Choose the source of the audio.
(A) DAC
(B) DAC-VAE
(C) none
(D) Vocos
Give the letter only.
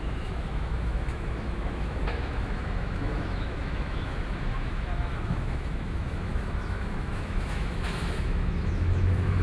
B